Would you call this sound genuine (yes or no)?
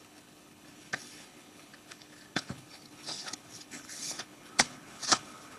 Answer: no